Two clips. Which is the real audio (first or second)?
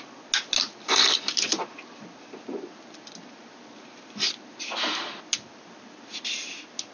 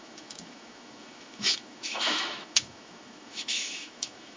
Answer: first